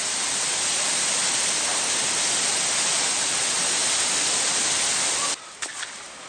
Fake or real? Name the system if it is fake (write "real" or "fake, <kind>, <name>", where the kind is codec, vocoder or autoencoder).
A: real